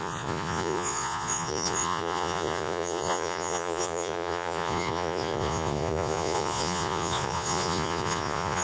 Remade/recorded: remade